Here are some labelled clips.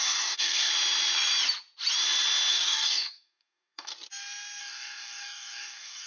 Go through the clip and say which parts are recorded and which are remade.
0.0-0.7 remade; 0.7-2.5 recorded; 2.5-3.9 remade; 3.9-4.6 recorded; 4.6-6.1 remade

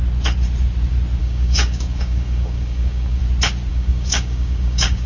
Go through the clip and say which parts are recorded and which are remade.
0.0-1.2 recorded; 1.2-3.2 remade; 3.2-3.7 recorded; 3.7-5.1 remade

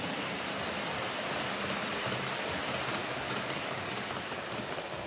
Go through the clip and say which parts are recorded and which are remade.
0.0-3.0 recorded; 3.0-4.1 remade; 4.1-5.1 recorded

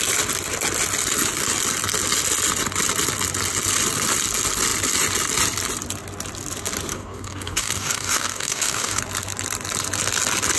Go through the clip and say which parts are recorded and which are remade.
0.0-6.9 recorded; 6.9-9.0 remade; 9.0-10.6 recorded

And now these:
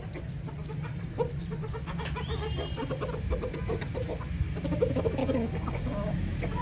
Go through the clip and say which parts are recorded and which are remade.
0.0-5.2 recorded; 5.2-6.1 remade; 6.1-6.6 recorded